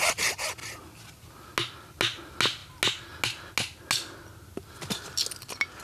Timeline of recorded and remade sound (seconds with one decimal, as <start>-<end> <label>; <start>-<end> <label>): 0.0-5.8 recorded

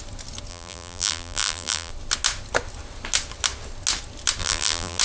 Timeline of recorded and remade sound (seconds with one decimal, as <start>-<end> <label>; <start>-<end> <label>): 0.0-0.5 recorded; 0.5-1.9 remade; 1.9-4.4 recorded; 4.4-5.0 remade

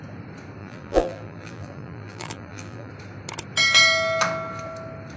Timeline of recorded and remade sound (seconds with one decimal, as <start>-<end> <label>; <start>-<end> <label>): 0.0-0.6 recorded; 0.6-2.9 remade; 2.9-5.2 recorded